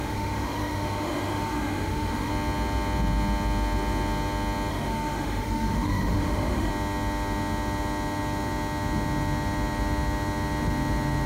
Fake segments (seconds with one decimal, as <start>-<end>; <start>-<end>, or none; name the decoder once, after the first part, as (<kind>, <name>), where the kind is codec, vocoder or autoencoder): 0.0-2.3 (autoencoder, DAC-VAE); 4.7-6.7